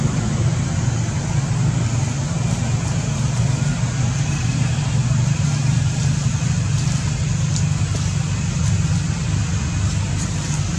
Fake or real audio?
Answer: real